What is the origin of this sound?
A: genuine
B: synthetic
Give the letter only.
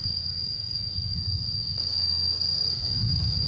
B